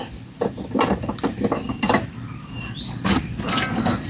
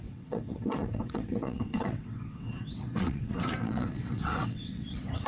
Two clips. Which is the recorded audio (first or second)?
first